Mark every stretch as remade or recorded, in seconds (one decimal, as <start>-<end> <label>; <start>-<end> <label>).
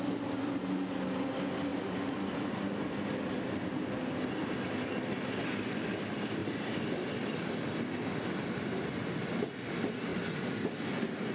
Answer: 0.0-1.7 recorded; 1.7-2.8 remade; 2.8-6.4 recorded; 6.4-7.6 remade; 7.6-10.1 recorded; 10.1-10.7 remade; 10.7-11.3 recorded